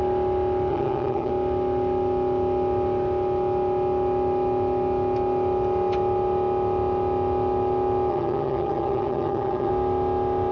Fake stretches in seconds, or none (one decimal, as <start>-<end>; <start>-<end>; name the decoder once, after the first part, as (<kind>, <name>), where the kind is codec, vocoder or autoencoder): 0.7-1.3 (vocoder, HiFi-GAN); 8.1-9.7